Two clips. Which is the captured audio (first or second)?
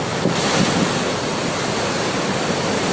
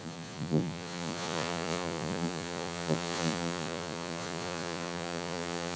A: first